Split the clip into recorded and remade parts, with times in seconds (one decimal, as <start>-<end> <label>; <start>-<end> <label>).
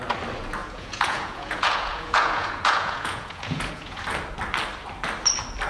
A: 0.0-0.6 recorded; 0.6-4.0 remade; 4.0-5.7 recorded